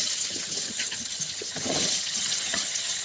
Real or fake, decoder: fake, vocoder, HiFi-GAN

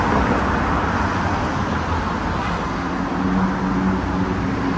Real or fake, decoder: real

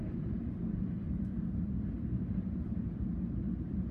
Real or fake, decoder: fake, vocoder, BigVGAN v2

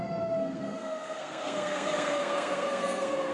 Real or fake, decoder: fake, codec, SNAC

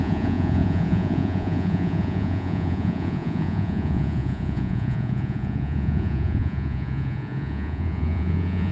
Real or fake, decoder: fake, vocoder, Vocos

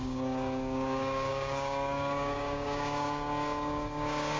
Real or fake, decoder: fake, codec, DAC